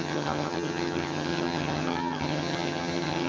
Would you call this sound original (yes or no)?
no